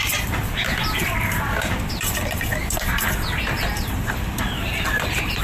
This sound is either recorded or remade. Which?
remade